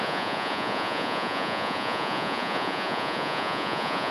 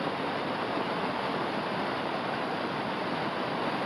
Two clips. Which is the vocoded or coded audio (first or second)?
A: first